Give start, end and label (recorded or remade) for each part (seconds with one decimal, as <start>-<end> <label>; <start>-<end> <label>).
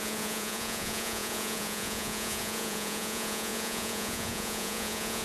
0.0-5.2 remade